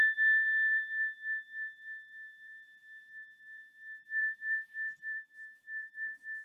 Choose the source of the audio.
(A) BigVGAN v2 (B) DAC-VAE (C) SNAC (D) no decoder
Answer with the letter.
A